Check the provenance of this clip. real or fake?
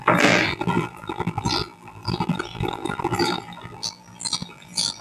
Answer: fake